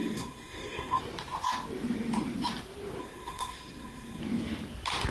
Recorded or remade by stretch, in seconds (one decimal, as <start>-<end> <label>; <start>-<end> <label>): 0.0-1.0 remade; 1.0-3.0 recorded; 3.0-4.2 remade; 4.2-5.1 recorded